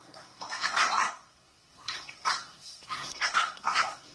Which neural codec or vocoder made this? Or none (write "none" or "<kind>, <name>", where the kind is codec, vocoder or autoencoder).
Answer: codec, SNAC